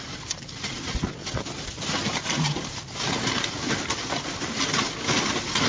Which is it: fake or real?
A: real